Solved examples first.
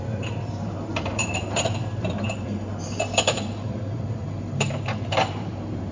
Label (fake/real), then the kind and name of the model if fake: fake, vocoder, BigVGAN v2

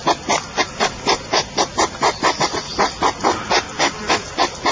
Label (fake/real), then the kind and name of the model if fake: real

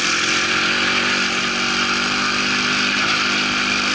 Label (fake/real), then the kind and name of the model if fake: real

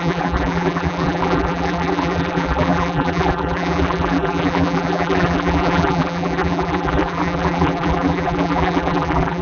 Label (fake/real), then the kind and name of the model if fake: fake, vocoder, BigVGAN v2